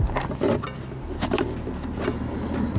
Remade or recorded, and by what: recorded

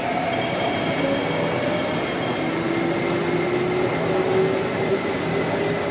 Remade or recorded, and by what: recorded